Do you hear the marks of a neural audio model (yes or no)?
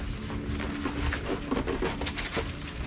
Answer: no